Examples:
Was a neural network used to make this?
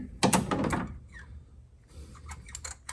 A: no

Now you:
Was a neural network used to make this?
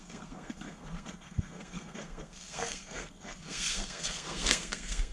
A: yes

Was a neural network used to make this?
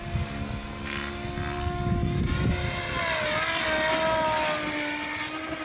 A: no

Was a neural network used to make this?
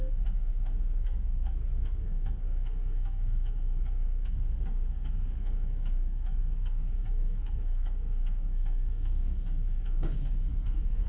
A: yes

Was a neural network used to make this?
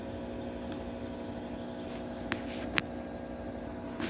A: no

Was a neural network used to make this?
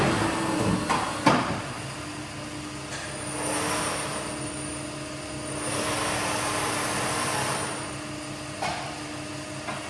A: no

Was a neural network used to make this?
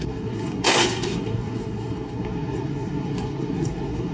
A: yes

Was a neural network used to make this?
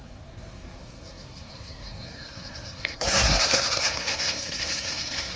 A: yes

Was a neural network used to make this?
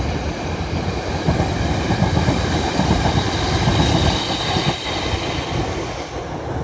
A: no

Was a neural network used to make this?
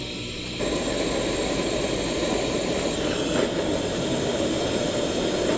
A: no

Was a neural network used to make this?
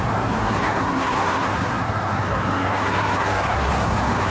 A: yes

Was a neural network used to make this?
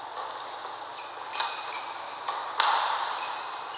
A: no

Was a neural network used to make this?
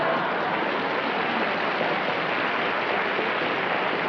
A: no